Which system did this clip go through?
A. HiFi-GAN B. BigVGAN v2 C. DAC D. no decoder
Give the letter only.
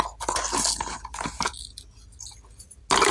D